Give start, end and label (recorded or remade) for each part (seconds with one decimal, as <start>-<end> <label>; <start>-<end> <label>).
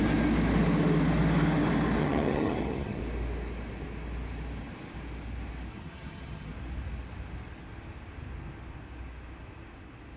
0.0-2.0 recorded; 2.0-3.0 remade; 3.0-5.7 recorded; 5.7-6.5 remade; 6.5-10.2 recorded